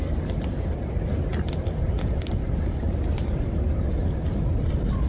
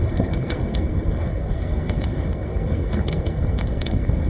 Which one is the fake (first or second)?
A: second